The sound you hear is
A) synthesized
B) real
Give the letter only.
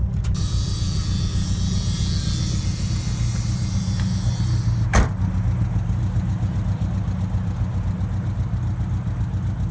B